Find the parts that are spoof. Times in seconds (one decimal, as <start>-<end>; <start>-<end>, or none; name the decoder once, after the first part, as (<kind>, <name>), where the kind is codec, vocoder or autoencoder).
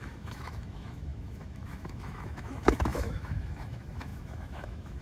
0.0-5.0 (autoencoder, DAC-VAE)